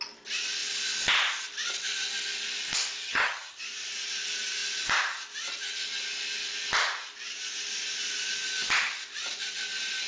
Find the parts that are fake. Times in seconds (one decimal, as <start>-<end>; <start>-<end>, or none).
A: 3.0-3.6